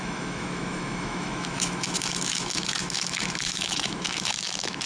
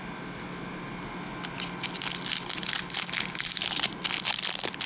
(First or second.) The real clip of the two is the second